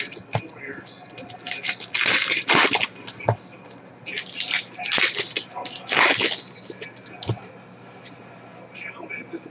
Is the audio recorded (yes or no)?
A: yes